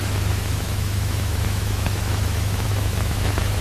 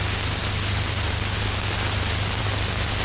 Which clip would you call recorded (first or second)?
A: second